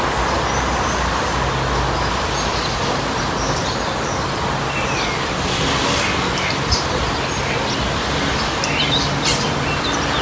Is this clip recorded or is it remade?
recorded